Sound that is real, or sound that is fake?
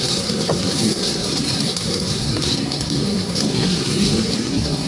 fake